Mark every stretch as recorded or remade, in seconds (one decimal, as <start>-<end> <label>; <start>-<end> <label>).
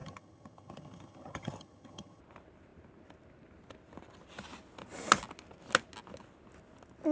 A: 0.0-2.2 remade; 2.2-7.1 recorded